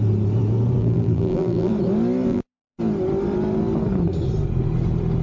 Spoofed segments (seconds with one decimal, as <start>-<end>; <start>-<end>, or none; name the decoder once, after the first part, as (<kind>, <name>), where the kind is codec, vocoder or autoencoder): 0.8-1.7 (vocoder, BigVGAN v2); 2.3-2.8